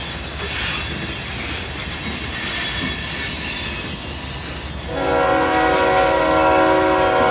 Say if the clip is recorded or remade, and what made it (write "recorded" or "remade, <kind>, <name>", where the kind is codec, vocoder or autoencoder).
recorded